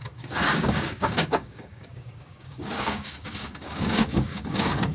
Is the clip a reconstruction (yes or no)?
yes